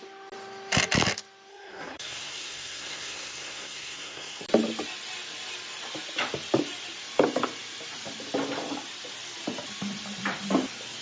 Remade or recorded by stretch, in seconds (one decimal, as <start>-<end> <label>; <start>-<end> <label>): 0.0-1.5 recorded; 1.5-4.4 remade; 4.4-11.0 recorded